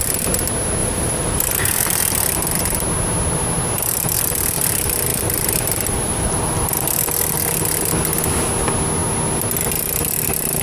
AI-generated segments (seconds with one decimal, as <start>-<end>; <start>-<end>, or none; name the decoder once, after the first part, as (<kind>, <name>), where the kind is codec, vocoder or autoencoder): 0.8-2.3 (vocoder, BigVGAN v2); 5.1-7.0